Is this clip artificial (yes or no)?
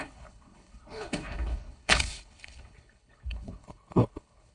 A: yes